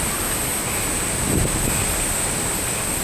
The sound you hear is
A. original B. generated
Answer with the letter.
A